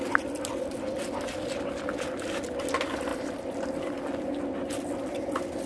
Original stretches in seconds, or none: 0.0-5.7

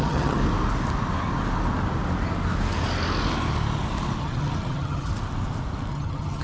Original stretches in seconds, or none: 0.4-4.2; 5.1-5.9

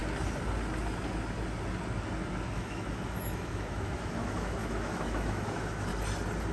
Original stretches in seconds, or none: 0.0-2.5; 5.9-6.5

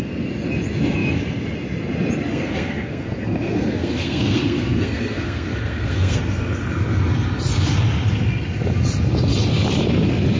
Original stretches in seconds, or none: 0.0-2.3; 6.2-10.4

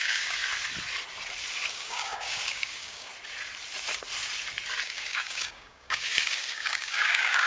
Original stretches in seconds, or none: 0.4-1.7; 3.1-4.8